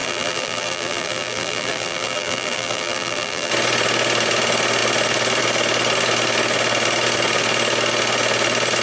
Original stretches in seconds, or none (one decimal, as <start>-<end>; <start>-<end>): 3.5-8.8